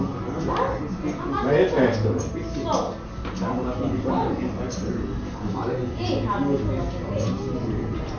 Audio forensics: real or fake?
real